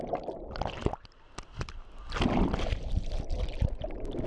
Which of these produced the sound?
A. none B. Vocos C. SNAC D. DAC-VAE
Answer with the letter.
A